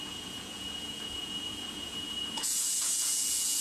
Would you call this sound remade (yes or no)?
yes